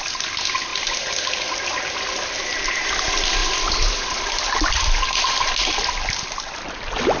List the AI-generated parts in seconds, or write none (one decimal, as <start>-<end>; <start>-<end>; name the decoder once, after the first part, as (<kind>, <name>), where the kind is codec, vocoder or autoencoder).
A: none